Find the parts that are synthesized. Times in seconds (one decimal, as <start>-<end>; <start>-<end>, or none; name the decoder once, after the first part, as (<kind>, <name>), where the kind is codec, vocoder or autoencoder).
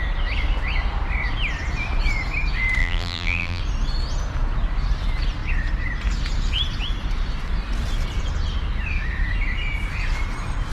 2.8-3.6 (vocoder, BigVGAN v2)